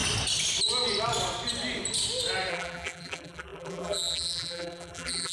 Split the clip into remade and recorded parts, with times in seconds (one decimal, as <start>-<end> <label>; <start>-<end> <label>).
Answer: 0.0-2.5 recorded; 2.5-5.3 remade